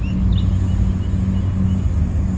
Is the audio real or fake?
real